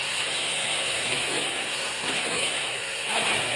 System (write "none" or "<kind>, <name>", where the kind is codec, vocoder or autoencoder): codec, SNAC